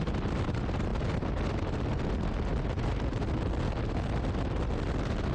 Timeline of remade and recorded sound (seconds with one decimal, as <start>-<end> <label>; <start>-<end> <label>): 0.0-5.3 recorded

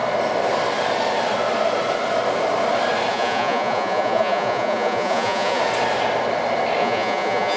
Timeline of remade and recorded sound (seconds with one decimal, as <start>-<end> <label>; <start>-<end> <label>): 0.0-3.1 recorded; 3.1-5.6 remade; 5.6-6.8 recorded; 6.8-7.6 remade

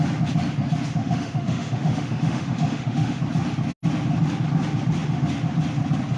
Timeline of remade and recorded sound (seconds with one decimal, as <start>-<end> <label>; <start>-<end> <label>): 0.0-1.0 recorded; 1.0-3.2 remade; 3.2-6.2 recorded

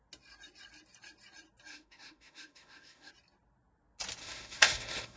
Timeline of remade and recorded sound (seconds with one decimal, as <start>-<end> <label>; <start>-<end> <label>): 0.0-1.7 recorded; 1.7-3.1 remade; 3.1-4.2 recorded; 4.2-5.2 remade

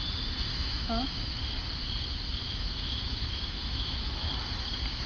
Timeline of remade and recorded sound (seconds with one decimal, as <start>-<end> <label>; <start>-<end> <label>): 0.0-0.5 recorded; 0.5-1.3 remade; 1.3-2.4 recorded; 2.4-4.3 remade; 4.3-5.1 recorded